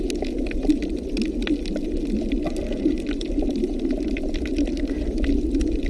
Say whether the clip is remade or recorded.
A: recorded